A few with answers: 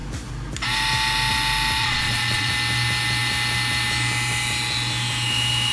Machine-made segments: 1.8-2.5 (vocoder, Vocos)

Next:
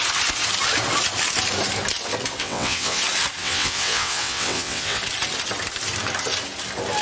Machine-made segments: 2.4-3.0 (vocoder, WaveNeXt); 3.4-5.0